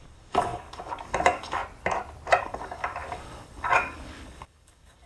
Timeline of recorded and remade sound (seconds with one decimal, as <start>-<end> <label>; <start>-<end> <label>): 0.0-1.6 remade; 1.6-2.4 recorded; 2.4-5.1 remade